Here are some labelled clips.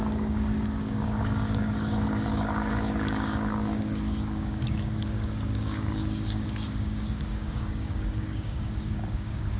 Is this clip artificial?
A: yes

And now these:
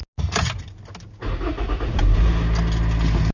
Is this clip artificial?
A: no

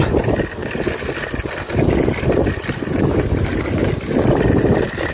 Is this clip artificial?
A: no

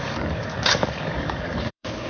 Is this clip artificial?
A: yes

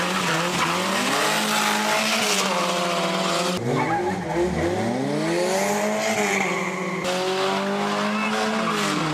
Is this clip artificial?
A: no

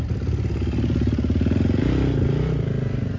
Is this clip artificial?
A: no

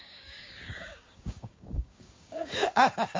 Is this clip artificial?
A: yes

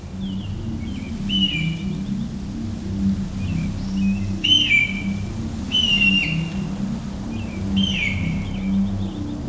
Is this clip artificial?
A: no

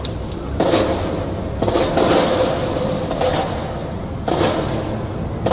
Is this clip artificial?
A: no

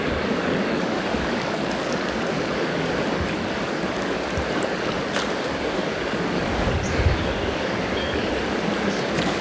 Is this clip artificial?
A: yes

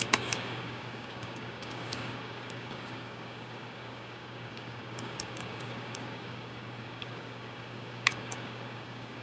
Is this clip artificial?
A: yes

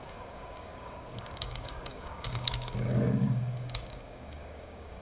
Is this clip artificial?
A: yes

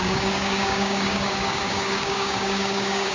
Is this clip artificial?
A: yes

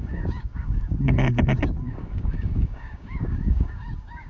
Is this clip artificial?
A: yes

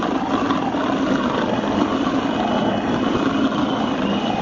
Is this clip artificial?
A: no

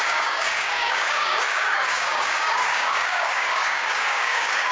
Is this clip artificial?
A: yes